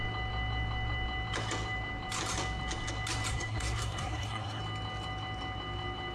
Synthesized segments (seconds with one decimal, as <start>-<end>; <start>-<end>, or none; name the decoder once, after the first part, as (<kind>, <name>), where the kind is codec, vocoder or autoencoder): 3.3-4.6 (codec, SNAC)